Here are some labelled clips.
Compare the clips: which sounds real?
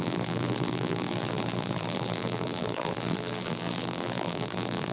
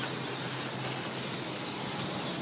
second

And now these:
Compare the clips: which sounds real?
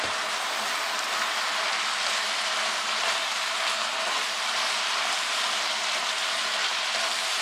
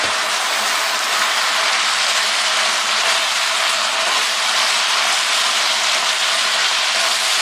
second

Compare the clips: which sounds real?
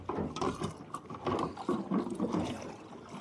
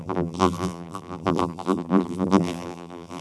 first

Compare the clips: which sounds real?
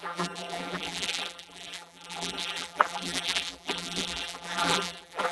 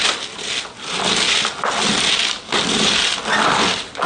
second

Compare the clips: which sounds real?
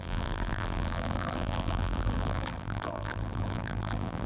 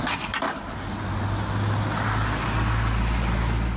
second